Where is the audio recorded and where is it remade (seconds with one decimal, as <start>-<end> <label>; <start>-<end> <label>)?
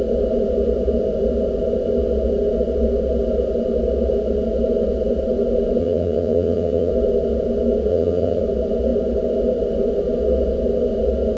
0.0-5.8 recorded; 5.8-6.9 remade; 6.9-7.9 recorded; 7.9-8.4 remade; 8.4-11.4 recorded